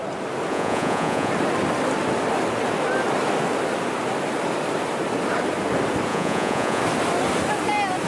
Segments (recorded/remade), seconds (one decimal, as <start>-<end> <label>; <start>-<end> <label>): 0.0-0.5 recorded; 0.5-1.3 remade; 1.3-6.1 recorded; 6.1-6.8 remade; 6.8-8.1 recorded